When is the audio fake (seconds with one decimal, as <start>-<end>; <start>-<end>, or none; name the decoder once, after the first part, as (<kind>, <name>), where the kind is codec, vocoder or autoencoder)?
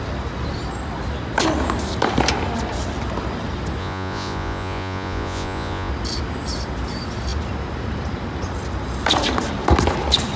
3.8-5.9 (vocoder, Vocos)